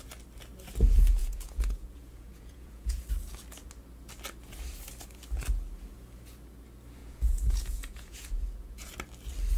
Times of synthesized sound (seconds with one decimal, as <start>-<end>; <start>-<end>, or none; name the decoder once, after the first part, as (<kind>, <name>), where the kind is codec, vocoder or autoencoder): 1.2-3.0 (vocoder, Vocos); 7.0-8.9

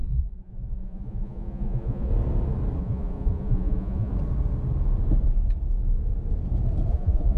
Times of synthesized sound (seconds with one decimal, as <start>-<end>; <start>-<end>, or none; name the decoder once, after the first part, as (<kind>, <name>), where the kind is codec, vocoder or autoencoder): 0.0-2.1 (vocoder, Vocos); 2.8-4.1; 6.9-7.4

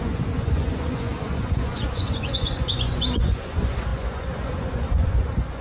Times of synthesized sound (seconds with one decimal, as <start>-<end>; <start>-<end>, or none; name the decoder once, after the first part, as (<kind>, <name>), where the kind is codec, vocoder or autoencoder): 0.0-5.6 (vocoder, Vocos)

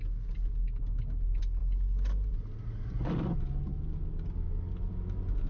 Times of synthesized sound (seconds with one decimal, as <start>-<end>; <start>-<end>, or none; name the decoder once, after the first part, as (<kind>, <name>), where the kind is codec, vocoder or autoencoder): none